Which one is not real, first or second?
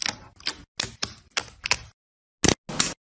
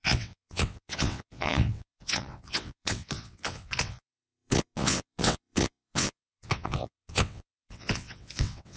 second